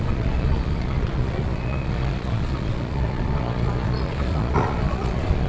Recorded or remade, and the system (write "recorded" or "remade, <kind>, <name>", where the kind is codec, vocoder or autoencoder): remade, vocoder, Vocos